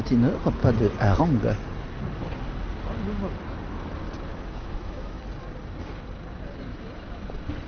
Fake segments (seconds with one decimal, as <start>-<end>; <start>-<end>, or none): 4.3-5.2; 6.7-7.3